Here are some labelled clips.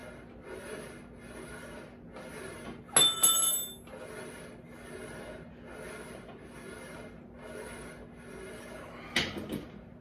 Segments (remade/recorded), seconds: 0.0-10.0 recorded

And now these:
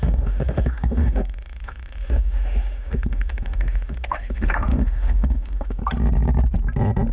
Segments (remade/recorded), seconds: 0.0-5.8 remade; 5.8-7.1 recorded

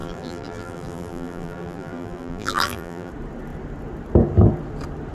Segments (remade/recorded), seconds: 0.0-3.1 remade; 3.1-5.1 recorded

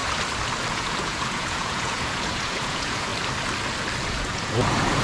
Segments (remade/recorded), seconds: 0.0-0.7 recorded; 0.7-3.1 remade; 3.1-4.1 recorded; 4.1-5.0 remade

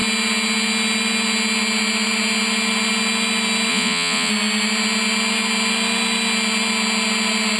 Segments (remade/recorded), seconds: 0.0-3.7 recorded; 3.7-4.3 remade; 4.3-7.6 recorded

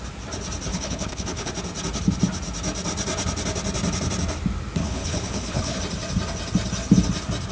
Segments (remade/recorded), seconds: 0.0-0.7 recorded; 0.7-1.5 remade; 1.5-4.8 recorded; 4.8-5.8 remade; 5.8-7.5 recorded

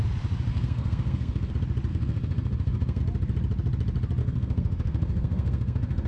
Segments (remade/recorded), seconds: 0.0-0.5 recorded; 0.5-1.5 remade; 1.5-1.9 recorded; 1.9-3.0 remade; 3.0-4.2 recorded; 4.2-6.1 remade

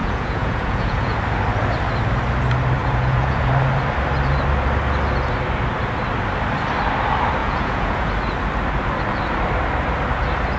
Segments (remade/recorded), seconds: 0.0-1.2 remade; 1.2-2.8 recorded; 2.8-3.5 remade; 3.5-7.4 recorded; 7.4-8.1 remade; 8.1-10.6 recorded